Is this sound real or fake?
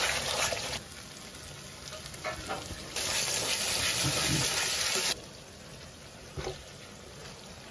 real